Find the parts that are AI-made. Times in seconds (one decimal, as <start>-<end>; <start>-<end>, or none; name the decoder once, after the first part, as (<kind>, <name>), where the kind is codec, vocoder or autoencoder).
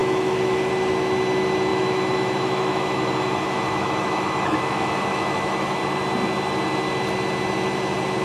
0.0-0.7 (autoencoder, DAC-VAE); 1.7-5.8